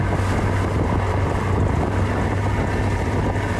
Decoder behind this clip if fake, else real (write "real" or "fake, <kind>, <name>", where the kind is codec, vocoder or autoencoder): real